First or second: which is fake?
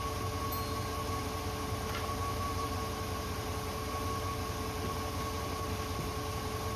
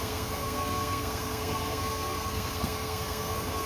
second